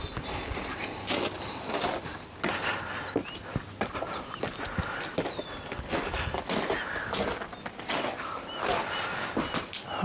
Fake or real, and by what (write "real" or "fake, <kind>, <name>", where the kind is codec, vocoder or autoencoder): real